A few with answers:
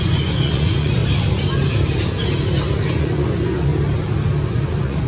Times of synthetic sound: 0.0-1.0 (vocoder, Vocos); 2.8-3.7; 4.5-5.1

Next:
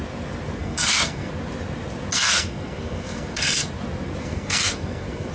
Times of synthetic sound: 0.6-1.3 (codec, SNAC); 2.1-3.7; 4.2-5.3

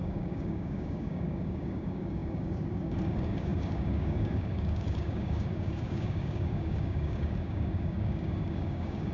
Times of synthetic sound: 0.0-9.1 (codec, DAC)

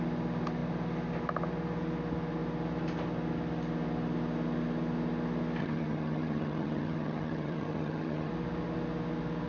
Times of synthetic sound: 5.6-8.3 (vocoder, HiFi-GAN)

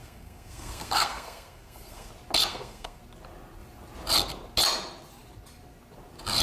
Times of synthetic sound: 0.0-2.1 (codec, SNAC); 2.5-3.0

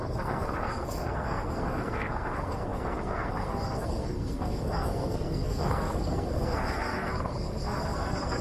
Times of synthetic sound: 0.0-8.4 (codec, SNAC)